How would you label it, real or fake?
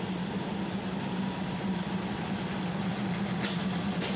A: real